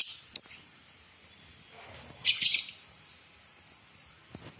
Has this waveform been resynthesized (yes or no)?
no